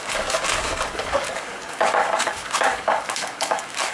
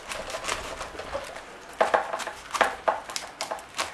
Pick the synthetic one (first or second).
first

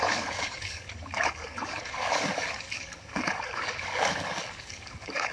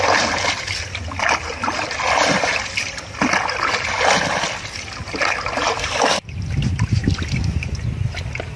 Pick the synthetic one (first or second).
first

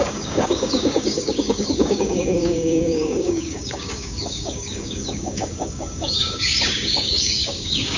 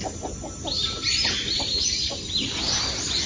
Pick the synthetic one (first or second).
first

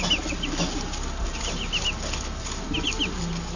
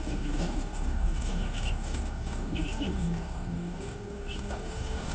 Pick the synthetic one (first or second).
second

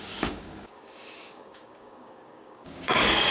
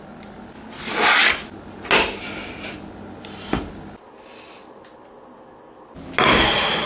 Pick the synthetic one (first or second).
first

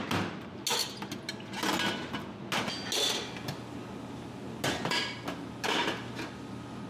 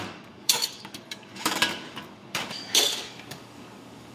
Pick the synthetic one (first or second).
second